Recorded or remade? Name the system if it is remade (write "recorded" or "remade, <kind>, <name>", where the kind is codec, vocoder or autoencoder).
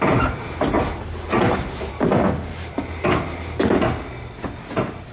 recorded